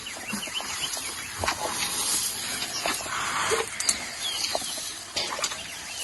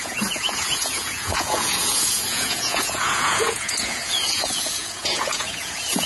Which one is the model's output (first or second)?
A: second